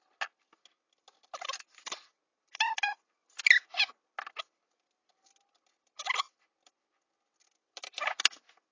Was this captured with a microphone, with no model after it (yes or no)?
yes